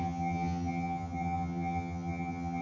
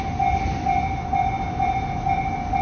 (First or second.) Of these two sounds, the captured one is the second